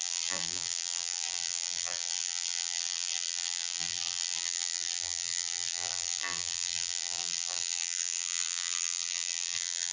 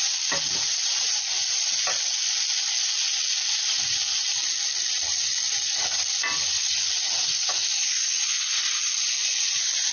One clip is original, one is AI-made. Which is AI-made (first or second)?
first